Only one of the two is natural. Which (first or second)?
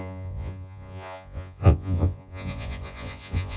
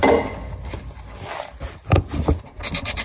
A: second